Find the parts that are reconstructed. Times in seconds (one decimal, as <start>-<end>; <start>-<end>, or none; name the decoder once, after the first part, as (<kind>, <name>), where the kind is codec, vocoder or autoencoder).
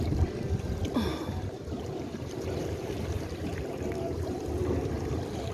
1.1-4.4 (vocoder, BigVGAN v2)